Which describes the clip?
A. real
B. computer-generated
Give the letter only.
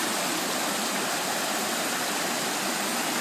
A